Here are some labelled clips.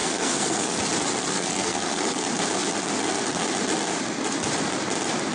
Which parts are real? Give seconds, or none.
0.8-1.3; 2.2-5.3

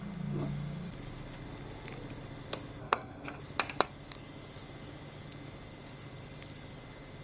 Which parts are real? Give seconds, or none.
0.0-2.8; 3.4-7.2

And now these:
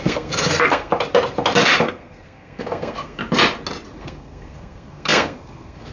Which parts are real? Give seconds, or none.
0.9-1.8; 3.2-4.0